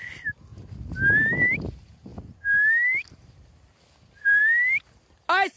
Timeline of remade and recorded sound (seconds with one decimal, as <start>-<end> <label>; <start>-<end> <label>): 0.0-5.6 recorded